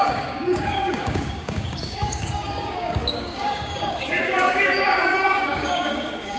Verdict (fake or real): fake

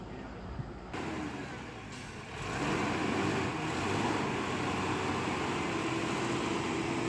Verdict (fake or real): real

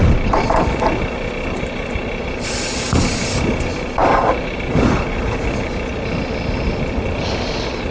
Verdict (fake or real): real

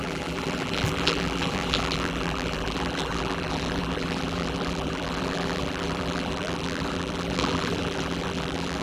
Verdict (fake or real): fake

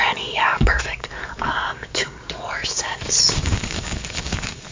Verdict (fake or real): fake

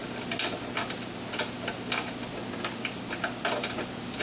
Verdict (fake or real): real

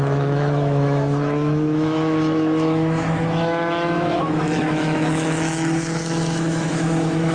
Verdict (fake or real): fake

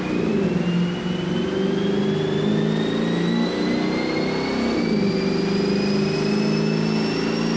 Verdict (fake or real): real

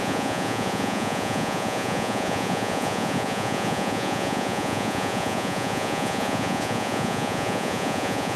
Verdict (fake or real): fake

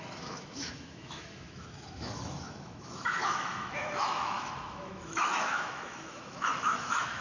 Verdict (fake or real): fake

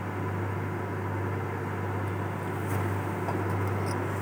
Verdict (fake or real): real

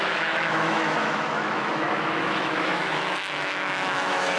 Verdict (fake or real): fake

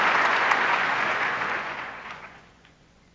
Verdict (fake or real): fake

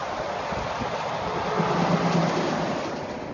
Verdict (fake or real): real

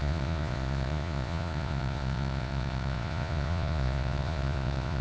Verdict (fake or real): fake